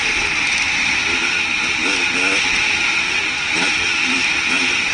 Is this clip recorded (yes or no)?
yes